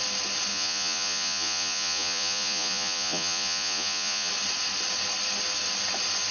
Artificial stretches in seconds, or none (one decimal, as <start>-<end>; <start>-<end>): 0.5-4.3